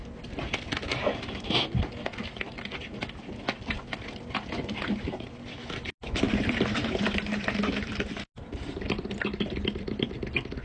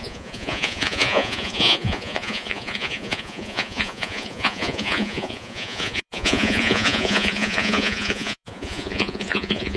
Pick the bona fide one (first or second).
first